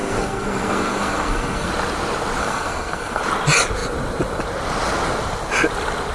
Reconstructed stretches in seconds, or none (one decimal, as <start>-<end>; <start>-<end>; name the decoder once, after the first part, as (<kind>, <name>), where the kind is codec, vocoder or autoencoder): 0.0-1.7 (codec, SNAC); 2.4-3.2